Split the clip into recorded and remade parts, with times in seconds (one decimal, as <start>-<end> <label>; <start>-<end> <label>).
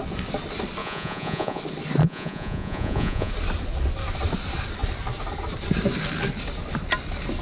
0.0-0.8 recorded; 0.8-1.6 remade; 1.6-2.0 recorded; 2.0-3.3 remade; 3.3-7.4 recorded